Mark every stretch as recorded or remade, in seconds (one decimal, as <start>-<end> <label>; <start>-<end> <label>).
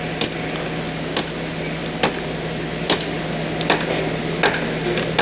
0.0-5.2 recorded